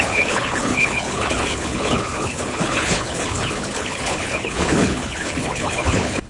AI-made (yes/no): yes